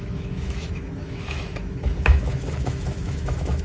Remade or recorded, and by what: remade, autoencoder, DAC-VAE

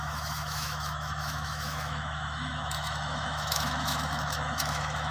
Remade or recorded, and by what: remade, autoencoder, DAC-VAE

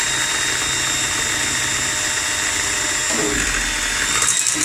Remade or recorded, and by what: recorded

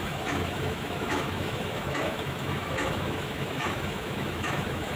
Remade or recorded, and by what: remade, autoencoder, DAC-VAE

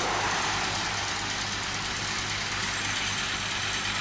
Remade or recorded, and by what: recorded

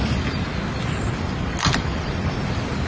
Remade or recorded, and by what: recorded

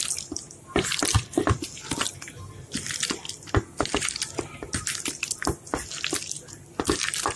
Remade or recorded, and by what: recorded